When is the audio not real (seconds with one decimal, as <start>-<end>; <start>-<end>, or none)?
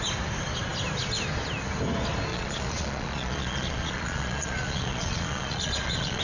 2.3-6.2